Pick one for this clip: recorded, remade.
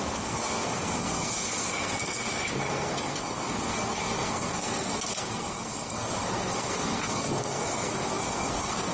remade